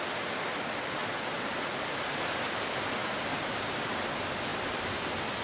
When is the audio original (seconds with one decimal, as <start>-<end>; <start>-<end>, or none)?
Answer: 0.0-3.0; 4.0-4.5